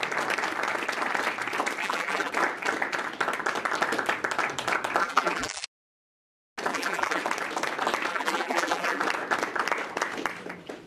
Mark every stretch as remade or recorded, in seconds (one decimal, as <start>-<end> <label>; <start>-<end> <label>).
0.0-1.8 recorded; 1.8-2.3 remade; 2.3-5.0 recorded; 5.0-5.6 remade; 5.6-6.7 recorded; 6.7-7.2 remade; 7.2-8.1 recorded; 8.1-9.0 remade; 9.0-10.9 recorded